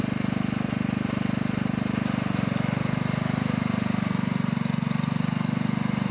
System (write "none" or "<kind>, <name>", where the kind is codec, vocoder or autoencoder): none